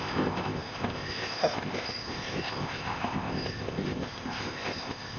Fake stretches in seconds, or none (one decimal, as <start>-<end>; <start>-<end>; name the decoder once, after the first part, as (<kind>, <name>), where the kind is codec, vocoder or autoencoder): 0.0-5.2 (codec, ZipCodec)